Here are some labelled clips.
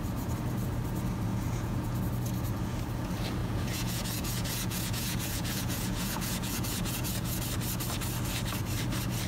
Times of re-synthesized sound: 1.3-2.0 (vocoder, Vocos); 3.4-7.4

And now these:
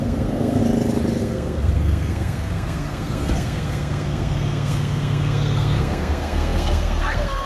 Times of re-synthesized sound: 0.0-0.6 (codec, SNAC); 1.2-7.5

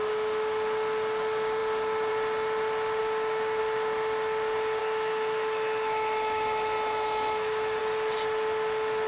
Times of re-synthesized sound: 3.0-3.6 (autoencoder, DAC-VAE); 4.8-7.8

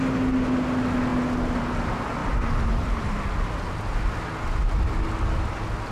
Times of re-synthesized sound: 2.2-3.2 (vocoder, BigVGAN v2)